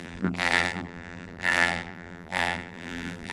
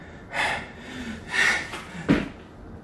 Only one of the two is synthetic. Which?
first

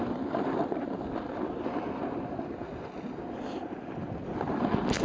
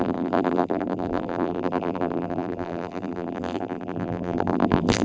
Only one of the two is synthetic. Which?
second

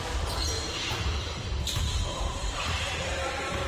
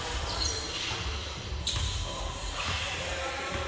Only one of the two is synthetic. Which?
first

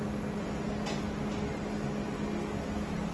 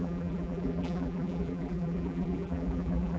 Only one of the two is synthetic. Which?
second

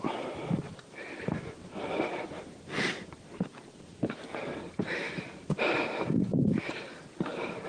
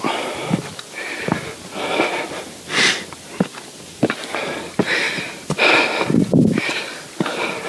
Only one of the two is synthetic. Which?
first